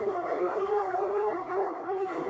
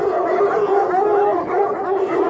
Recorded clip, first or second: second